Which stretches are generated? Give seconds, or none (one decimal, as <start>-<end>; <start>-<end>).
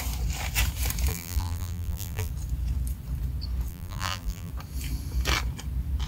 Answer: 1.1-2.3; 3.7-4.5